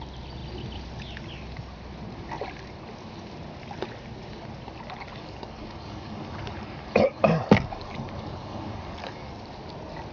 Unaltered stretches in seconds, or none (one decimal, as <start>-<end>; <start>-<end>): 0.0-5.1; 9.3-10.1